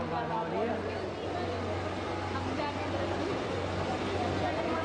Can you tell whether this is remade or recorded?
recorded